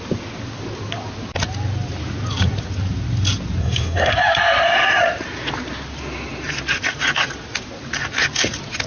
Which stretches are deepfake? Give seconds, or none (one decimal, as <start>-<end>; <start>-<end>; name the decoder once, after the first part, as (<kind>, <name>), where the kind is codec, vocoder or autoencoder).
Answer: 3.6-4.1 (codec, SNAC)